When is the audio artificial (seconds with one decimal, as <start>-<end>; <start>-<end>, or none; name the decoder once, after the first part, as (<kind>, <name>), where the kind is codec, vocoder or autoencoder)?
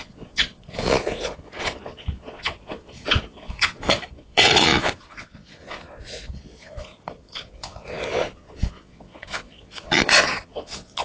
0.0-11.0 (vocoder, Vocos)